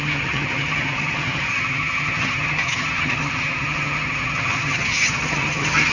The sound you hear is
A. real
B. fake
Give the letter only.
B